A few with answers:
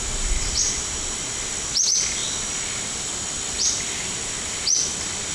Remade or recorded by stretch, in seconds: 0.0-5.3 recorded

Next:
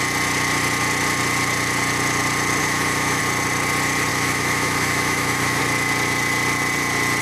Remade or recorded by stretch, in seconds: 0.0-2.6 recorded; 2.6-3.2 remade; 3.2-4.1 recorded; 4.1-5.6 remade; 5.6-7.2 recorded

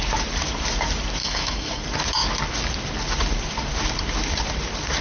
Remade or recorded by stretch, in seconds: 0.0-1.2 recorded; 1.2-1.8 remade; 1.8-5.0 recorded